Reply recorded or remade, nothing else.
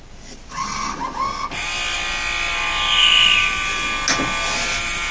recorded